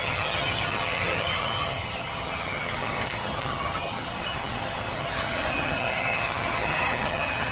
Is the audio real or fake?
fake